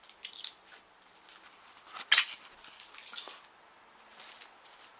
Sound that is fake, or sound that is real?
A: real